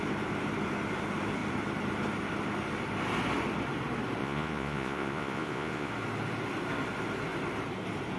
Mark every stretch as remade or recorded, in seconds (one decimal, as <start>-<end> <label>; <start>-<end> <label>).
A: 0.0-4.2 recorded; 4.2-5.9 remade; 5.9-8.2 recorded